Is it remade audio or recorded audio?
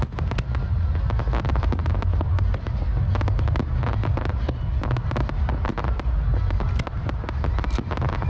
recorded